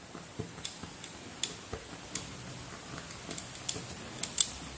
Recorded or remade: recorded